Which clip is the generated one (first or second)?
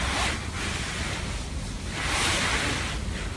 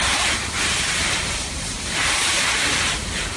second